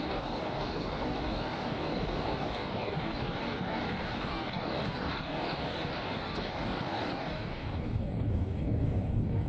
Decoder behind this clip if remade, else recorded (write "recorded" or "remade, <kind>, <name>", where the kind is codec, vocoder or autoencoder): remade, codec, DAC